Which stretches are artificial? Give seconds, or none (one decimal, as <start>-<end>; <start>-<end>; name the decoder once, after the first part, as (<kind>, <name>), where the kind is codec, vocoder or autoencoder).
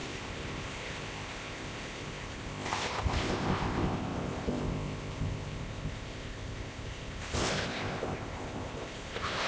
0.0-9.5 (codec, ZipCodec)